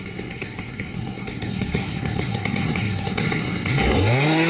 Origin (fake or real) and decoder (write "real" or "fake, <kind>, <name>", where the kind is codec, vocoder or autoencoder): fake, codec, SNAC